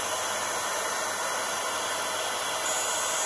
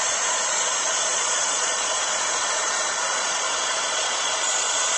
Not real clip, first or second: second